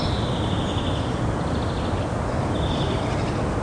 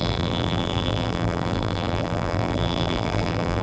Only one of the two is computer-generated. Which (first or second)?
second